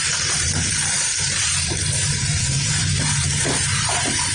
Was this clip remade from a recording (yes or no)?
yes